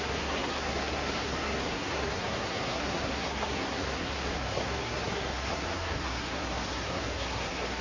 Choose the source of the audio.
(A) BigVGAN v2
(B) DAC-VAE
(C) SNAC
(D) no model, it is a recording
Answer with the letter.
C